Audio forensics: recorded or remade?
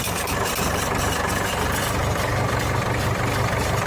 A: recorded